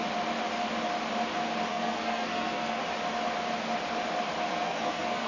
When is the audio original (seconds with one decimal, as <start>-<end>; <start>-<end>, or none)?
0.0-1.7; 2.8-4.5